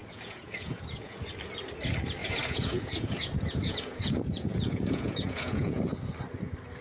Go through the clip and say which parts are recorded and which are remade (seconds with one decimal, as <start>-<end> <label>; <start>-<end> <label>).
0.0-1.3 remade; 1.3-2.2 recorded; 2.2-5.8 remade; 5.8-6.8 recorded

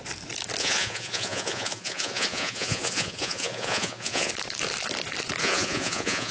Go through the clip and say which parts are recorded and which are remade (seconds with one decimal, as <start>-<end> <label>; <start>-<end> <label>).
0.0-0.6 recorded; 0.6-4.3 remade; 4.3-5.4 recorded; 5.4-6.3 remade

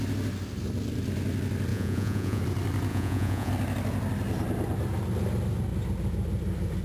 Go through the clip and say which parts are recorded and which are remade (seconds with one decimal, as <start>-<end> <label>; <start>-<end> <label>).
0.0-1.7 recorded; 1.7-2.4 remade; 2.4-2.9 recorded; 2.9-3.5 remade; 3.5-6.8 recorded